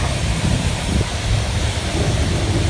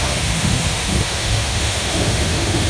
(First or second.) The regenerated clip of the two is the second